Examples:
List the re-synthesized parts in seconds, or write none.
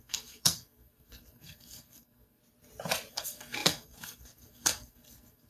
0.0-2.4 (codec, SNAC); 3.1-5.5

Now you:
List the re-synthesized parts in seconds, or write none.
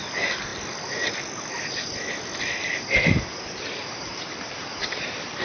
3.8-5.4 (vocoder, BigVGAN v2)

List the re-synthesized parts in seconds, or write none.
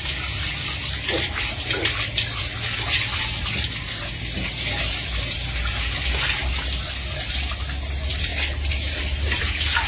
none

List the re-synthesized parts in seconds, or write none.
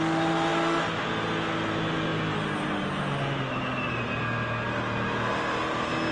0.5-1.1 (autoencoder, DAC-VAE)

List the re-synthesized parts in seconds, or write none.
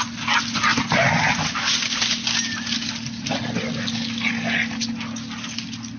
none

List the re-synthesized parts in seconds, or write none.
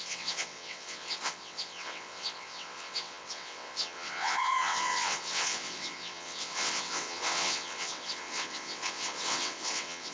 0.0-10.1 (vocoder, WaveNeXt)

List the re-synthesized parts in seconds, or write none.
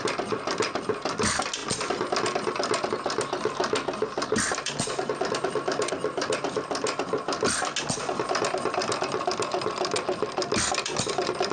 none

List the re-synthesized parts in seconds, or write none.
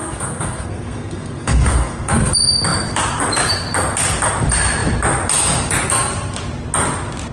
0.0-2.3 (codec, SNAC)